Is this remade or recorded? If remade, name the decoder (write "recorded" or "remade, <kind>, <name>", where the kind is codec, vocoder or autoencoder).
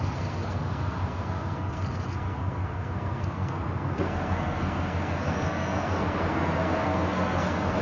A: remade, codec, SNAC